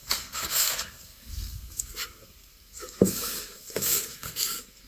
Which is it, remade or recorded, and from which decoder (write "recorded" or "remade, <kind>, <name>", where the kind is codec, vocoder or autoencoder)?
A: remade, codec, SNAC